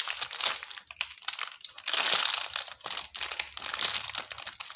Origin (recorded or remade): recorded